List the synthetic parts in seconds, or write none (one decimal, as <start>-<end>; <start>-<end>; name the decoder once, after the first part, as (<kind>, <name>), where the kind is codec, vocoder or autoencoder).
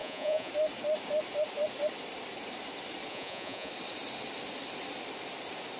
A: 0.0-0.5 (vocoder, Vocos); 3.1-3.7